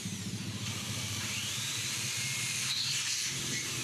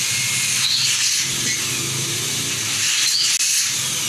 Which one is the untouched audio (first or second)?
second